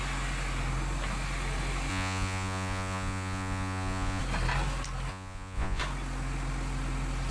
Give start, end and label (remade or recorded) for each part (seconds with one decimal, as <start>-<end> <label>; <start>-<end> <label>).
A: 0.0-1.9 recorded; 1.9-4.2 remade; 4.2-5.1 recorded; 5.1-5.8 remade; 5.8-7.3 recorded